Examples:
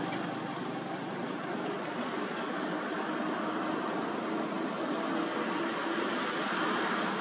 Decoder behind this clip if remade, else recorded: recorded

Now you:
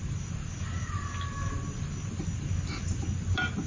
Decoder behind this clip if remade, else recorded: recorded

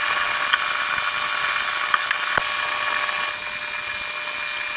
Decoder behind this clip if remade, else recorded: recorded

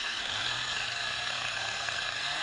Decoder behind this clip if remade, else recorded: remade, codec, SNAC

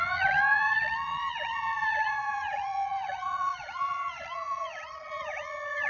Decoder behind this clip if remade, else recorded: remade, vocoder, Vocos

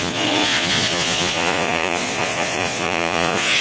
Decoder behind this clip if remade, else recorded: remade, vocoder, Vocos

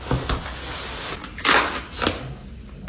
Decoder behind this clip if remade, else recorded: recorded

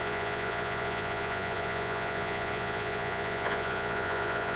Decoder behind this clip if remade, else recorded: remade, vocoder, Vocos